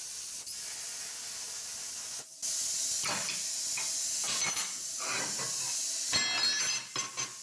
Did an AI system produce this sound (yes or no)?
no